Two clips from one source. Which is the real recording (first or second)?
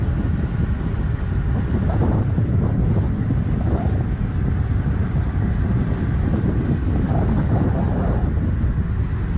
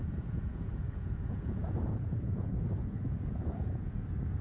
first